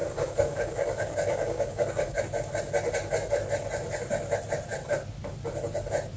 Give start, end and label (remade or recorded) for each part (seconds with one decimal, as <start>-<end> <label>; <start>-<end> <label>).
0.0-2.2 remade; 2.2-6.2 recorded